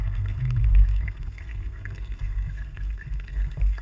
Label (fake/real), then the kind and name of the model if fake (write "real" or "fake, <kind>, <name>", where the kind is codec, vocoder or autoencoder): fake, codec, SNAC